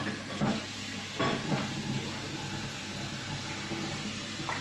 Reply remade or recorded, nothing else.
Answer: recorded